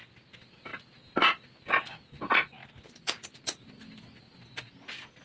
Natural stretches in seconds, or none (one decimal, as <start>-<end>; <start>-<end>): 0.0-2.6; 3.8-5.2